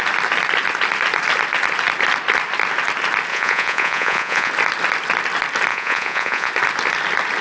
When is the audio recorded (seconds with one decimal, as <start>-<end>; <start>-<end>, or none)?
0.0-3.3; 4.5-5.7; 6.5-7.4